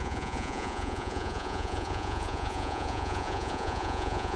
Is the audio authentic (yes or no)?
no